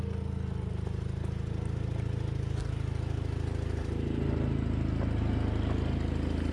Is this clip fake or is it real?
real